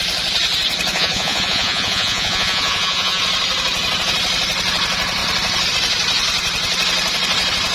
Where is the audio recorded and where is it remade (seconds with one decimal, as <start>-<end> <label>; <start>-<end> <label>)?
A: 0.0-0.9 recorded; 0.9-3.2 remade; 3.2-7.7 recorded